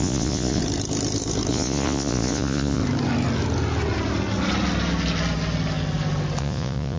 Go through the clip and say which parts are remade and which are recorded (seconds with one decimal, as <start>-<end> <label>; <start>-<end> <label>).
0.0-0.6 remade; 0.6-1.5 recorded; 1.5-2.8 remade; 2.8-6.4 recorded; 6.4-7.0 remade